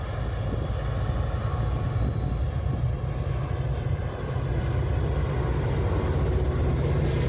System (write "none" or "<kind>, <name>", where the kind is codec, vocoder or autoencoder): none